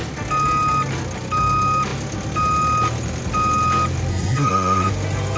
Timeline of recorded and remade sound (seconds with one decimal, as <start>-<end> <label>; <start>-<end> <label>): 0.0-4.1 recorded; 4.1-4.9 remade; 4.9-5.4 recorded

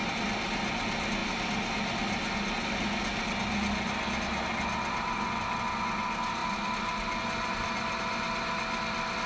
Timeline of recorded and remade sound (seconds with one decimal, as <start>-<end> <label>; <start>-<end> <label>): 0.0-9.3 recorded

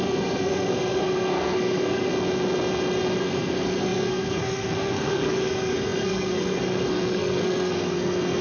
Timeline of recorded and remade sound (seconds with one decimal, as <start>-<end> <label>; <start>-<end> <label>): 0.0-2.1 remade; 2.1-3.2 recorded; 3.2-8.4 remade

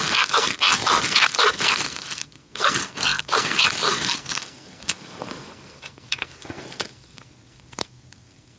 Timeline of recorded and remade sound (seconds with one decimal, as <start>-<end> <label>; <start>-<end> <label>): 0.0-8.6 remade

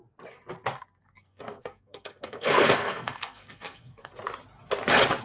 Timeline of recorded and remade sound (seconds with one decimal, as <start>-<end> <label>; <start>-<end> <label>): 0.0-1.0 recorded; 1.0-4.1 remade; 4.1-5.2 recorded

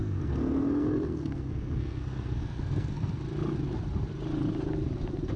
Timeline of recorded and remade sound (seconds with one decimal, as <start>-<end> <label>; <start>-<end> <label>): 0.0-3.2 remade; 3.2-5.4 recorded